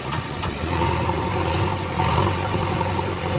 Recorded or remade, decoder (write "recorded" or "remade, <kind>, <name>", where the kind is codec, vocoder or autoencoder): remade, vocoder, Vocos